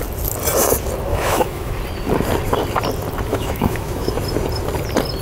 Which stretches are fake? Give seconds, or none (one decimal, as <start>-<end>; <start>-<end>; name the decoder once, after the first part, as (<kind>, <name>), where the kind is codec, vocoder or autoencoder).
1.1-1.7 (autoencoder, DAC-VAE); 3.3-4.1